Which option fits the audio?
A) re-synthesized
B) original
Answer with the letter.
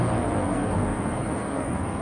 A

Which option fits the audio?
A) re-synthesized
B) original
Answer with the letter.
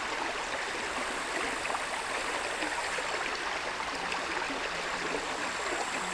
B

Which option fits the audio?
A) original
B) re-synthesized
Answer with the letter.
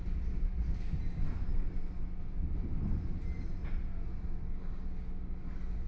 A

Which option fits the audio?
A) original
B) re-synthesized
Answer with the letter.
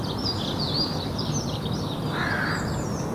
A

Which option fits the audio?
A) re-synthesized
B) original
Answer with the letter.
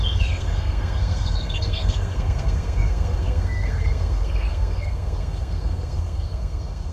A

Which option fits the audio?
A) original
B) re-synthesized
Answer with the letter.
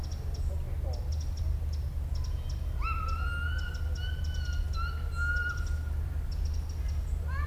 A